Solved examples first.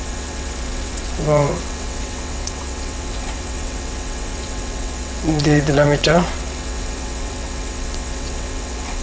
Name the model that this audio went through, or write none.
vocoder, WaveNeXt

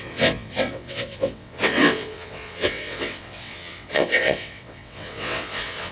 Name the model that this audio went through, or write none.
vocoder, WaveNeXt